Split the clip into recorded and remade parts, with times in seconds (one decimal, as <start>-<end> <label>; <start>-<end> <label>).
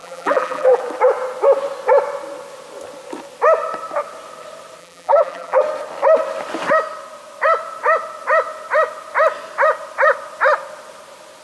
0.0-0.8 remade; 0.8-4.8 recorded; 4.8-5.6 remade; 5.6-11.4 recorded